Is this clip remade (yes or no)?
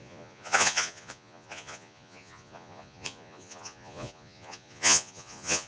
yes